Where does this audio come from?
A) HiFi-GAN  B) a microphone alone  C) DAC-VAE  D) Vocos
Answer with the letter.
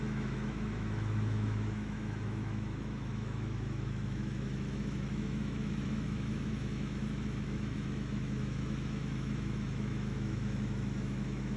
C